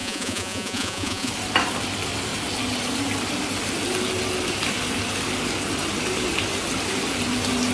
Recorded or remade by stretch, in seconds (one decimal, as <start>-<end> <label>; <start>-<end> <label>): 0.0-1.3 remade; 1.3-7.7 recorded